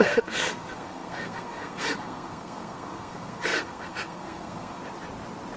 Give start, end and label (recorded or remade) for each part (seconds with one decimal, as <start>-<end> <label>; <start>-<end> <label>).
0.0-4.8 remade; 4.8-5.6 recorded